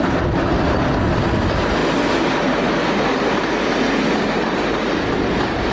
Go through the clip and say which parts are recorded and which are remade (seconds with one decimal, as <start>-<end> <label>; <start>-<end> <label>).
0.0-5.7 recorded